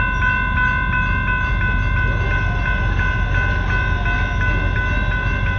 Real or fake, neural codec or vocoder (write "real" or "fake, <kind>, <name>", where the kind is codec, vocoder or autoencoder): real